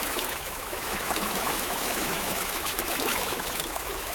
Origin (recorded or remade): remade